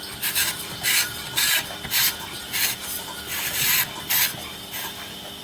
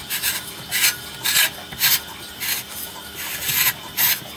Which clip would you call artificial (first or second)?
first